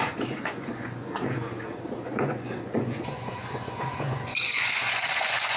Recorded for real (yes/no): no